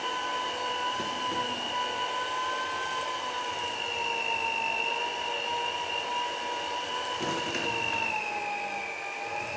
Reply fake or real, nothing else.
real